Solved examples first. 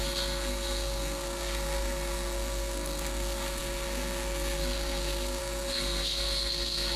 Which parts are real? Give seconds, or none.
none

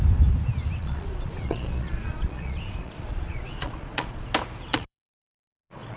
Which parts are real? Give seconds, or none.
0.0-0.8; 4.3-4.7

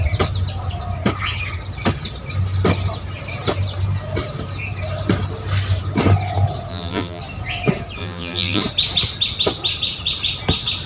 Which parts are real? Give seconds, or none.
0.0-6.7; 7.2-8.0; 8.6-10.9

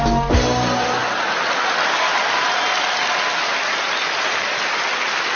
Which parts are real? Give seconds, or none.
0.0-5.4

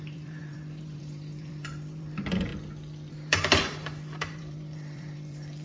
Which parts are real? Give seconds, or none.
2.5-3.1

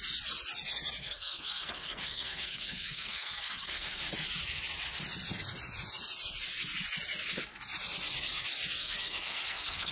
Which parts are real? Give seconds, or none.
0.0-1.0; 4.0-8.8

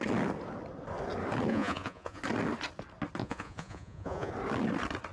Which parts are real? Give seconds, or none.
0.0-1.5; 2.2-3.2; 4.3-5.1